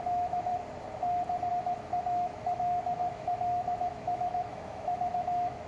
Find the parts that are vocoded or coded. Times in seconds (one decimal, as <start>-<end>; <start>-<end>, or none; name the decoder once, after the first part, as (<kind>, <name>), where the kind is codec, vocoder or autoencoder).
0.0-0.5 (autoencoder, DAC-VAE); 1.5-5.7